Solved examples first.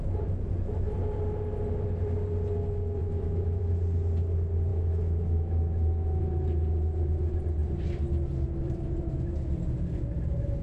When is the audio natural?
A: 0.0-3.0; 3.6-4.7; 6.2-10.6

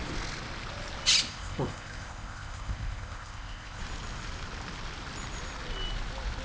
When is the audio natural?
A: 0.0-1.3; 3.8-6.4

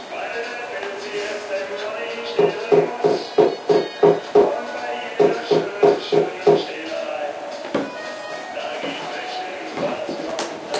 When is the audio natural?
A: 0.0-10.8

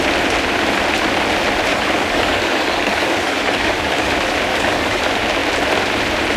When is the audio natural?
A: 0.0-1.7; 4.1-4.5; 5.0-6.4

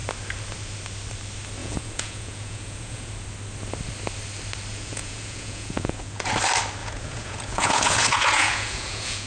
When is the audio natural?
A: 0.0-1.6; 3.1-4.7; 6.3-6.8

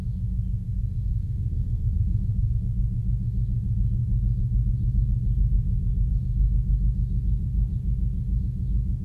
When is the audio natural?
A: 0.0-1.1; 2.5-9.0

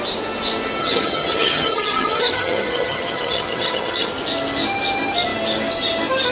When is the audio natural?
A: 0.0-0.8; 4.1-6.3